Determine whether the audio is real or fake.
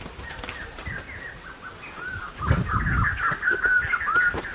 real